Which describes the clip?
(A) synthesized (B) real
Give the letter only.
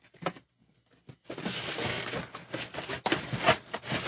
B